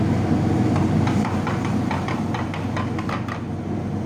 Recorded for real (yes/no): yes